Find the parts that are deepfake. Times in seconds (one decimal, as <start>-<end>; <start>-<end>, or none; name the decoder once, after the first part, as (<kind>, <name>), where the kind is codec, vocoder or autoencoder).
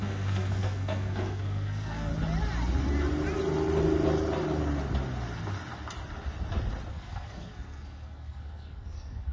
0.0-2.1 (codec, SNAC); 6.9-9.3